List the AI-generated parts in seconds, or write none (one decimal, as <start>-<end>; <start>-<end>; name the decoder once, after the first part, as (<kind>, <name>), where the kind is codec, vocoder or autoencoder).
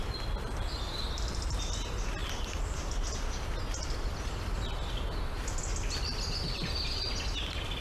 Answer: 0.0-1.5 (vocoder, BigVGAN v2); 2.2-3.6